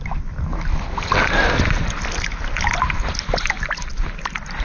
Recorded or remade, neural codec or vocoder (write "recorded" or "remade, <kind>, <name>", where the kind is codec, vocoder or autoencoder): recorded